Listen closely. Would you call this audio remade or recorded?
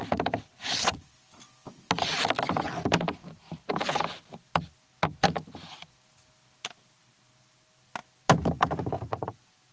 recorded